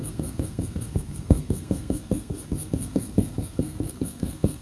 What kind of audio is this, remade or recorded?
remade